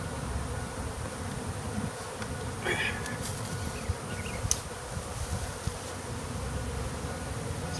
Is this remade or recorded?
recorded